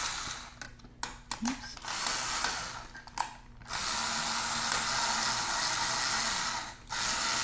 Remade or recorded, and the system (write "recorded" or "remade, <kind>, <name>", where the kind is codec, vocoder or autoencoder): recorded